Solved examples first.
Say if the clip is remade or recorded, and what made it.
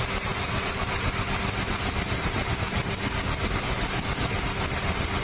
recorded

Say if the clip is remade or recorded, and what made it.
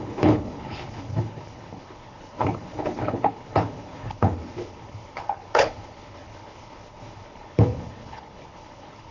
remade, codec, HILCodec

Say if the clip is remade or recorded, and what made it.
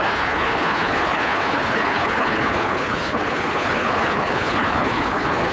remade, codec, HILCodec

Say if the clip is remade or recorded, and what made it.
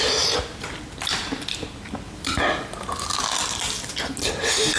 recorded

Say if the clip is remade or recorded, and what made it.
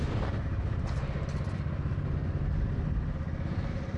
recorded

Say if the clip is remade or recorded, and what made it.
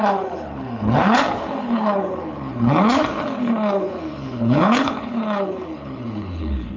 remade, codec, HILCodec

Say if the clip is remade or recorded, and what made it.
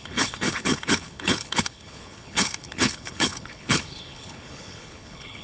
remade, codec, HILCodec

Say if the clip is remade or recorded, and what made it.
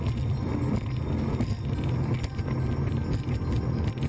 recorded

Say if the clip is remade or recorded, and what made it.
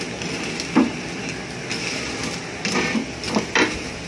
recorded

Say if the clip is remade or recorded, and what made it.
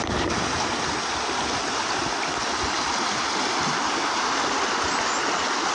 recorded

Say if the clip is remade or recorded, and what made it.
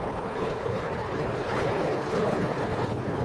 remade, codec, HILCodec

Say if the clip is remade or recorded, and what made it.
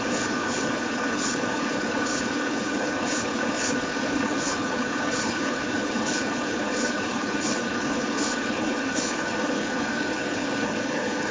remade, codec, HILCodec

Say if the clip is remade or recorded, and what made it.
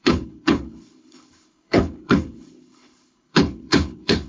remade, codec, HILCodec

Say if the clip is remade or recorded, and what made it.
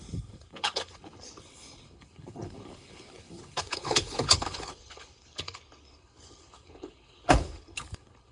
remade, codec, HILCodec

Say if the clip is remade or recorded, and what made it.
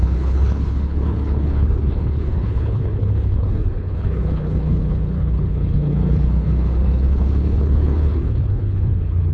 remade, codec, HILCodec